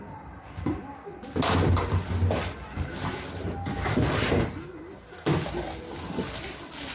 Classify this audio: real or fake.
real